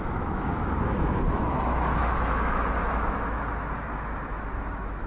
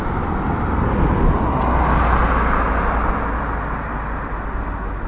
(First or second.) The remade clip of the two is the first